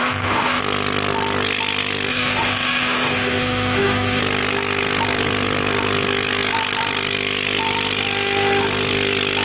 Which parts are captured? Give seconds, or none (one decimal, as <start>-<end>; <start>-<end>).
0.6-2.1; 4.2-9.4

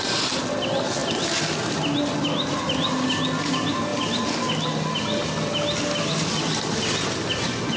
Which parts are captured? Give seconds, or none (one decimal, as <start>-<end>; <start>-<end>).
0.0-7.8

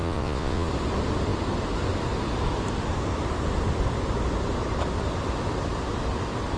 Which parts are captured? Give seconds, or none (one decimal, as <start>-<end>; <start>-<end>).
0.7-6.6

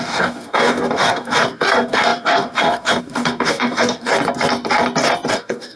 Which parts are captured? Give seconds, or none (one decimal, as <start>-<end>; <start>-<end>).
4.1-5.3